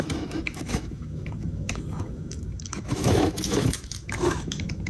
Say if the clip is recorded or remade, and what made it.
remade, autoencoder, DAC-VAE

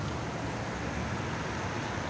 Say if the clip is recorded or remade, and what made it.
recorded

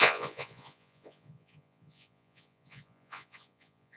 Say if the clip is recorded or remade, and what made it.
remade, vocoder, Vocos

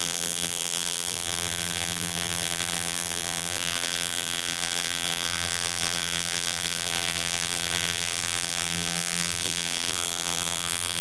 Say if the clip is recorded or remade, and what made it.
remade, vocoder, BigVGAN v2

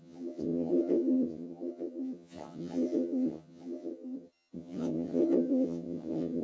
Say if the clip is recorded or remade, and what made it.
remade, vocoder, HiFi-GAN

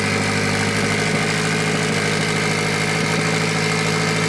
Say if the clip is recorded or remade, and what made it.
recorded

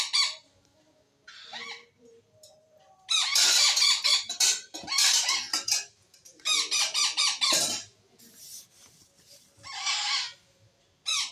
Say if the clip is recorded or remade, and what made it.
recorded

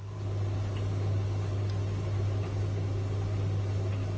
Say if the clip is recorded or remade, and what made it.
recorded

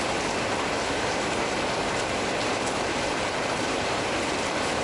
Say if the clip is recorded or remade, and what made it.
remade, vocoder, BigVGAN v2